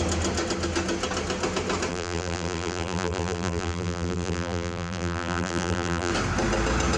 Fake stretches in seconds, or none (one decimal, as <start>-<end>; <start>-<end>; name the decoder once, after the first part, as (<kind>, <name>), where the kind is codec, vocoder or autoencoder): 1.9-6.1 (vocoder, BigVGAN v2)